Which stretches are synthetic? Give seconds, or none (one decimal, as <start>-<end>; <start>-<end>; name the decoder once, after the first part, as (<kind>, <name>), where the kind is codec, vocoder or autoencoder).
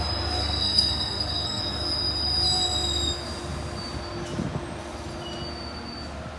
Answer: 0.4-1.6 (codec, SNAC)